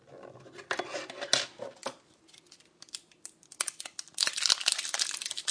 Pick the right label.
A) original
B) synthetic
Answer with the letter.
A